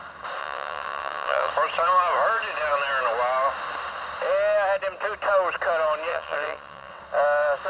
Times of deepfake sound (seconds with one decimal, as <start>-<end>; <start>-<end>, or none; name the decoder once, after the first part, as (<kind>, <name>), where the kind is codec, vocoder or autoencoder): 0.4-1.5 (vocoder, WaveNeXt); 6.1-7.0